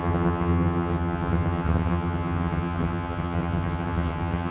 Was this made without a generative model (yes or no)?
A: no